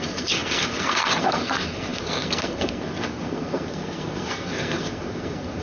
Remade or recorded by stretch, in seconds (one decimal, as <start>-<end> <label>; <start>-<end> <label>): 0.0-5.6 remade